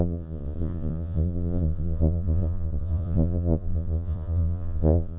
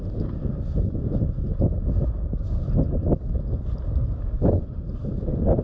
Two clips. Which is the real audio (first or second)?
second